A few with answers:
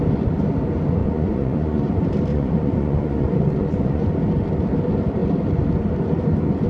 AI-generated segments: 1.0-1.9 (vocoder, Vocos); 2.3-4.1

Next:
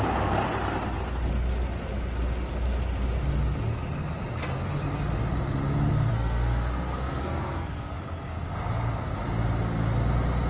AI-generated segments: 6.1-7.9 (codec, SNAC)

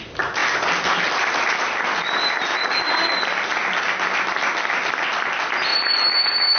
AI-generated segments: none

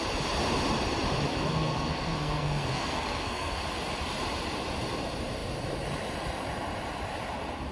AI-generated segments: 1.3-3.6 (codec, SNAC)

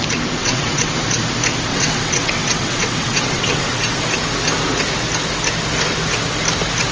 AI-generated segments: 0.4-0.9 (vocoder, WaveNeXt); 1.7-4.0

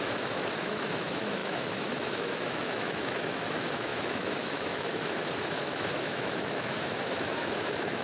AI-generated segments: 0.0-8.0 (autoencoder, DAC-VAE)